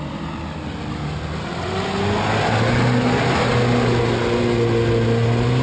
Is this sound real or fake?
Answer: real